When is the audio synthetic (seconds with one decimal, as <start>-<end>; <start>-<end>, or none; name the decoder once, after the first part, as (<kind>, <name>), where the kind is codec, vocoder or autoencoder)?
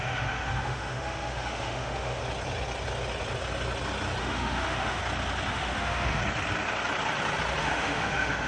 0.0-2.2 (autoencoder, DAC-VAE); 4.2-5.0; 5.5-6.2; 7.6-8.5